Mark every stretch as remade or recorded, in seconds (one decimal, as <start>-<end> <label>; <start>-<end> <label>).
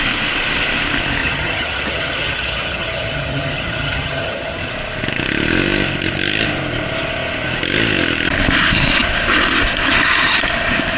0.0-1.2 recorded; 1.2-4.7 remade; 4.7-11.0 recorded